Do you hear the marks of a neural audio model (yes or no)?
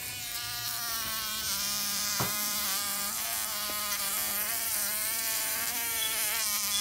yes